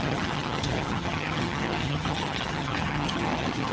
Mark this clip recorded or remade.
remade